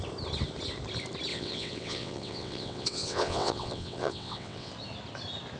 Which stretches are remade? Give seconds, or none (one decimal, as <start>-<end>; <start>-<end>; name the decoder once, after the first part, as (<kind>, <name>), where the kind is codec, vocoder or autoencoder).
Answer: 1.3-4.7 (vocoder, WaveNeXt)

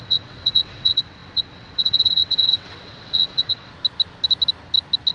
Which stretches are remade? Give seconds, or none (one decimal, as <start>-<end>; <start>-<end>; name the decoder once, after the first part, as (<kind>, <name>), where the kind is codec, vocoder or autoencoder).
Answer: 0.0-3.7 (vocoder, WaveNeXt)

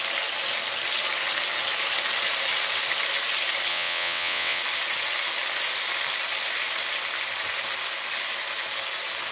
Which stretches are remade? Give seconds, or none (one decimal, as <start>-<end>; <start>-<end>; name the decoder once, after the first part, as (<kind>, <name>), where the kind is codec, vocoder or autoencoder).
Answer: 3.7-4.6 (vocoder, WaveNeXt)

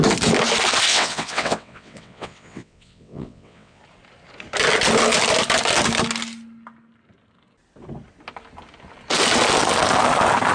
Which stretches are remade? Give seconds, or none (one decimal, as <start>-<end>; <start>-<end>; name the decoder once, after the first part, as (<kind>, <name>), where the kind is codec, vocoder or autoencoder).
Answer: 0.9-3.8 (vocoder, WaveNeXt)

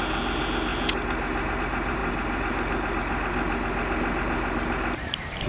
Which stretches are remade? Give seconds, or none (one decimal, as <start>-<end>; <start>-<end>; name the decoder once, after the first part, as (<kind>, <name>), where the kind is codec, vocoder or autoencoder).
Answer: none